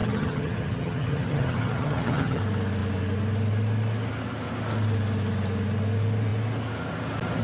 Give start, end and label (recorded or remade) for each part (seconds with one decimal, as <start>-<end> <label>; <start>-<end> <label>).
0.0-2.4 remade; 2.4-7.4 recorded